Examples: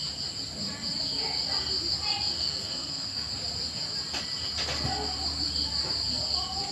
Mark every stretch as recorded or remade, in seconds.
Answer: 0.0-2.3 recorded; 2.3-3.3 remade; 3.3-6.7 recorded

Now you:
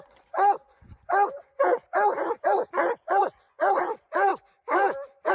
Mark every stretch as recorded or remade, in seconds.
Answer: 0.0-4.3 remade; 4.3-5.3 recorded

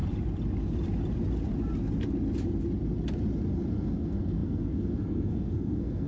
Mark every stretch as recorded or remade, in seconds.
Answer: 0.0-3.7 recorded; 3.7-6.1 remade

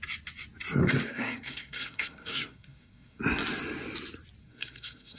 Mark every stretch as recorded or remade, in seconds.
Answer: 0.0-0.8 recorded; 0.8-3.2 remade; 3.2-4.4 recorded; 4.4-5.2 remade

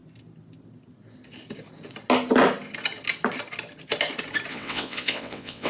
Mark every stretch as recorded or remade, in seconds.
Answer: 0.0-4.5 recorded; 4.5-5.7 remade

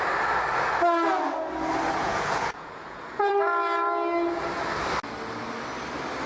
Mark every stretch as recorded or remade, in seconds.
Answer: 0.0-2.0 recorded; 2.0-3.3 remade; 3.3-6.3 recorded

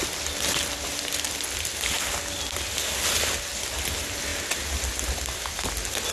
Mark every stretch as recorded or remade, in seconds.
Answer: 0.0-6.1 recorded